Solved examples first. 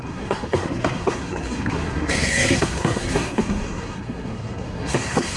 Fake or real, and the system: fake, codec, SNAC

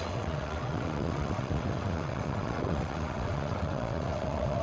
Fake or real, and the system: fake, vocoder, WaveNeXt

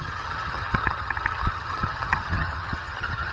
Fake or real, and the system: fake, vocoder, HiFi-GAN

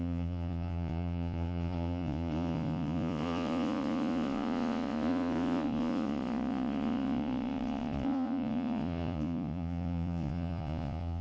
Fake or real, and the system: fake, vocoder, Vocos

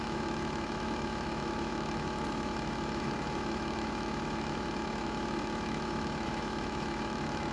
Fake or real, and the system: fake, autoencoder, DAC-VAE